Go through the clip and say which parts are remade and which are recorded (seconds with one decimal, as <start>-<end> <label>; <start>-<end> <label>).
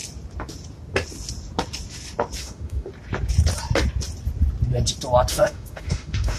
0.0-2.4 recorded; 2.4-2.9 remade; 2.9-5.3 recorded; 5.3-6.4 remade